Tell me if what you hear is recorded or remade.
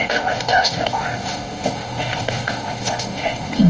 remade